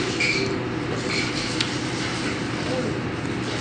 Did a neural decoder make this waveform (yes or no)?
no